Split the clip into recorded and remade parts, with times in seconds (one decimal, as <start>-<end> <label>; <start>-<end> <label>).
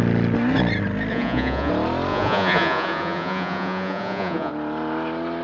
0.0-1.1 recorded; 1.1-1.7 remade; 1.7-2.1 recorded; 2.1-4.5 remade; 4.5-5.4 recorded